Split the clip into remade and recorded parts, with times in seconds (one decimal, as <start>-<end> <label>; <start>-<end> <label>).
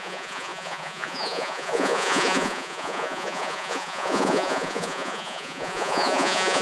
0.0-6.6 remade